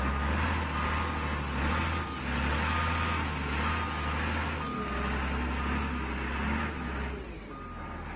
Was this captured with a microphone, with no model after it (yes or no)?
yes